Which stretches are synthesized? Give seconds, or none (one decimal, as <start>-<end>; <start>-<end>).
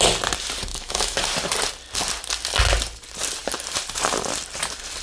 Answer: 0.7-1.2